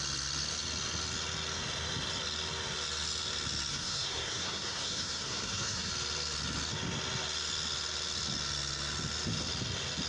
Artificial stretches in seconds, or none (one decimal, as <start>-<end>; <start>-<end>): 3.7-5.9